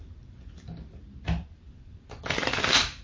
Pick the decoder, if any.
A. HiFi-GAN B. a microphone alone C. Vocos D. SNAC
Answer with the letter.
B